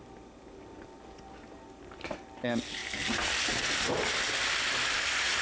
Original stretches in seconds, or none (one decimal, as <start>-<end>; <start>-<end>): 0.0-5.4